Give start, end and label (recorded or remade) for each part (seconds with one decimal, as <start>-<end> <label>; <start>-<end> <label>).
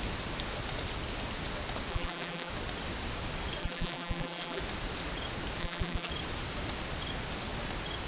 0.0-1.9 recorded; 1.9-2.5 remade; 2.5-3.6 recorded; 3.6-4.6 remade; 4.6-5.6 recorded; 5.6-6.1 remade; 6.1-8.1 recorded